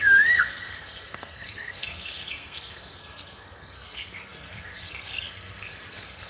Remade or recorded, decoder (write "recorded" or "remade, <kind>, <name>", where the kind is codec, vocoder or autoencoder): remade, codec, SNAC